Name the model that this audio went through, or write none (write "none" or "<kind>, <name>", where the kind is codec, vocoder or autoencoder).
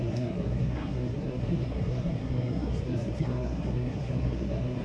codec, SNAC